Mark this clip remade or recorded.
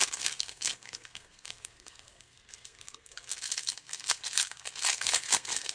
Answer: remade